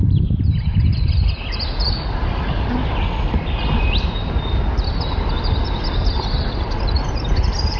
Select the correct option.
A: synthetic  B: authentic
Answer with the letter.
B